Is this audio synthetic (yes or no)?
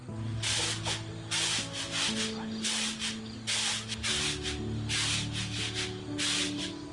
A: no